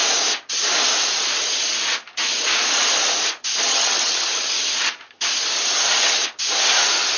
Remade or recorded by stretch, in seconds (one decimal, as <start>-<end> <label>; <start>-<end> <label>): 0.0-3.7 recorded; 3.7-4.5 remade; 4.5-7.2 recorded